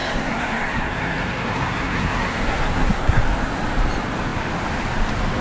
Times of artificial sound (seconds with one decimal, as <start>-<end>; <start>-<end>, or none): 0.0-3.2